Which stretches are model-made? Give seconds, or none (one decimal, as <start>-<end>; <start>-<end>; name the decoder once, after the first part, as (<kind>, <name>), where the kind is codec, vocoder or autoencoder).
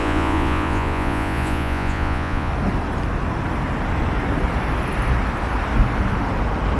0.0-2.5 (vocoder, Vocos)